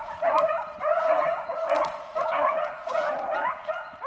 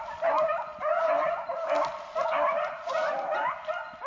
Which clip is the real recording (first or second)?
second